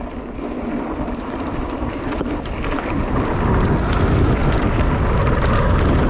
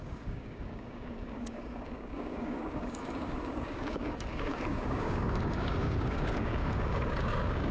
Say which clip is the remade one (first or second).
second